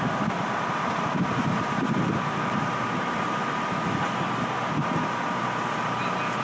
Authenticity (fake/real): real